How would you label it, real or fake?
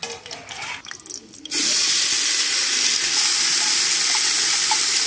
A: real